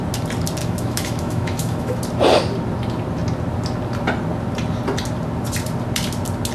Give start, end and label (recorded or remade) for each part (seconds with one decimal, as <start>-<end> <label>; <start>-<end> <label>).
0.0-0.6 recorded; 0.6-2.0 remade; 2.0-6.5 recorded